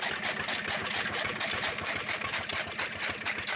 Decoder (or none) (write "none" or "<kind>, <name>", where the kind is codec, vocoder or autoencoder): none